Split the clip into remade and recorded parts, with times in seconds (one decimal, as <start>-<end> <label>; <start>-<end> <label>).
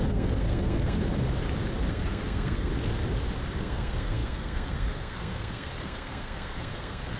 0.0-1.0 remade; 1.0-1.9 recorded; 1.9-2.7 remade; 2.7-3.6 recorded; 3.6-7.2 remade